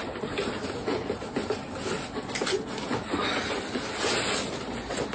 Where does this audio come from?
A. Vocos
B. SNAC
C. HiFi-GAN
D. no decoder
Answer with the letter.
D